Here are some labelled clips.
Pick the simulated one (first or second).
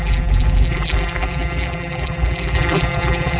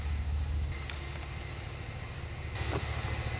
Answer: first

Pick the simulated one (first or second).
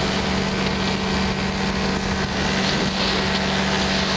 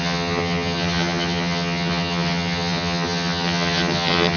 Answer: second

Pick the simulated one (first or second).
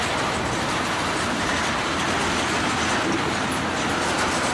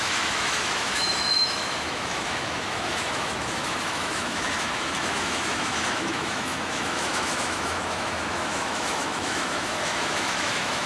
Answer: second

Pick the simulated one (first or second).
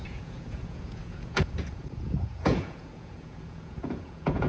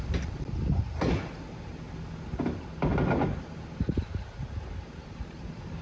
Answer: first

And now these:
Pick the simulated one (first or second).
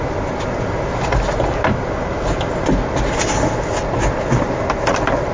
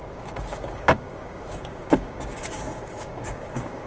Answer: second